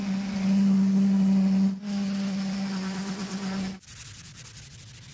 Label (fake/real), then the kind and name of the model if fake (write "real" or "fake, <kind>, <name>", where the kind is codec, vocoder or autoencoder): real